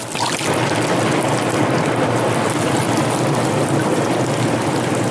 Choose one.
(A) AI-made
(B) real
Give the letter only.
B